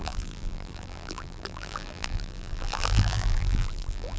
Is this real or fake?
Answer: fake